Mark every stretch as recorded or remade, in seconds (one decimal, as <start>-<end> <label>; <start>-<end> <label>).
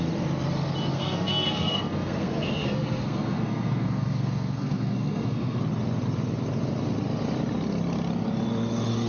0.0-0.9 recorded; 0.9-5.6 remade; 5.6-9.1 recorded